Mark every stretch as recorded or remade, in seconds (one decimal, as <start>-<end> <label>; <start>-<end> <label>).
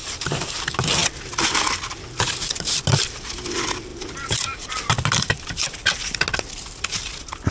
0.0-0.6 remade; 0.6-7.5 recorded